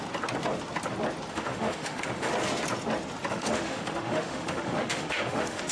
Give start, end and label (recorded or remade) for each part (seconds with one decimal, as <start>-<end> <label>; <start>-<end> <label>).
0.0-1.3 recorded; 1.3-2.3 remade; 2.3-3.3 recorded; 3.3-5.7 remade